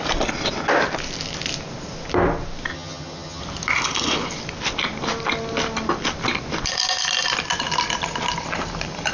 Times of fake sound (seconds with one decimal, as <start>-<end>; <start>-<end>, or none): 2.7-3.4